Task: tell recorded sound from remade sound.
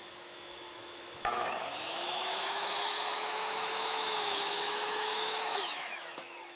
remade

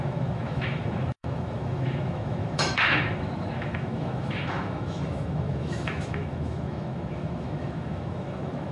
remade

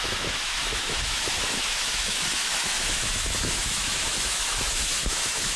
remade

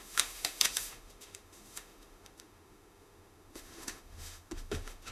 remade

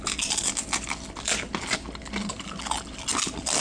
recorded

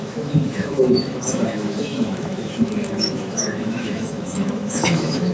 remade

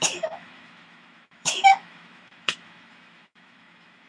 remade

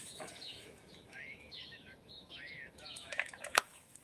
remade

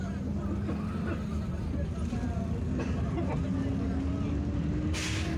recorded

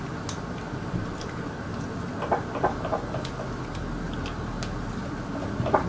recorded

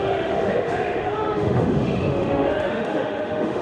remade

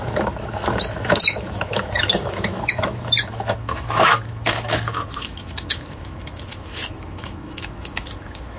remade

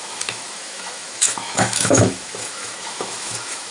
remade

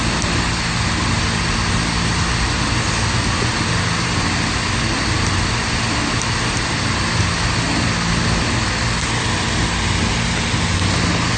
recorded